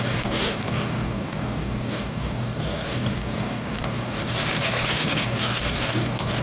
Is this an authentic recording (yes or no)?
no